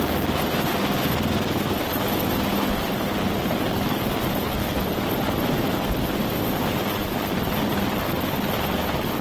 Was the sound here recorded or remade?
recorded